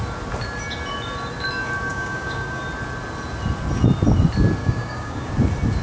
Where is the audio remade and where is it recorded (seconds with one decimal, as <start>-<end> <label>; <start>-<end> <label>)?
0.0-1.9 recorded; 1.9-2.6 remade; 2.6-4.6 recorded; 4.6-5.3 remade; 5.3-5.8 recorded